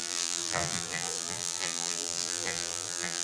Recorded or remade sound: remade